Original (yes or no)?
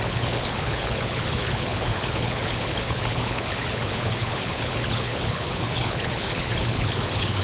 no